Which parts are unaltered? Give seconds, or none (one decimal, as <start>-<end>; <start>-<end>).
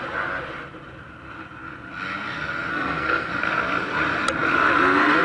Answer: 0.0-2.7; 3.3-5.2